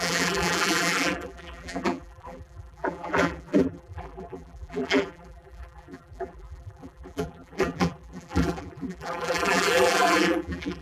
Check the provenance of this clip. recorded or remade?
remade